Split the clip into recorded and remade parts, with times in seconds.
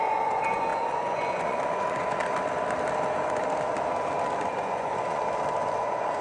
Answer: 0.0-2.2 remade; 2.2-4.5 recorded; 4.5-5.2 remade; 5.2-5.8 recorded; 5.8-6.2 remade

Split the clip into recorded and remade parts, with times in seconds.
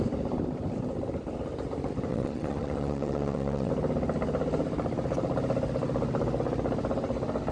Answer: 0.0-2.1 recorded; 2.1-3.7 remade; 3.7-7.5 recorded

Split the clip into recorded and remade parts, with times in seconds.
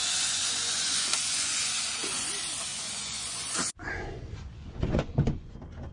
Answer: 0.0-2.3 remade; 2.3-2.7 recorded; 2.7-5.5 remade; 5.5-5.9 recorded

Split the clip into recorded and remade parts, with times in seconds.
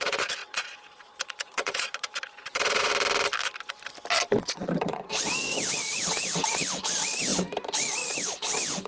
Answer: 0.0-2.9 remade; 2.9-4.4 recorded; 4.4-8.9 remade